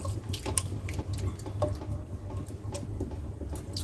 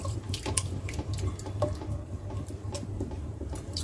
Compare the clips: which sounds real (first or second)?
first